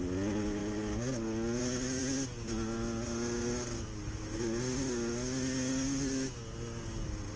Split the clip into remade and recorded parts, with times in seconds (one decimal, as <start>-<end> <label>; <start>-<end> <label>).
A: 0.0-7.4 recorded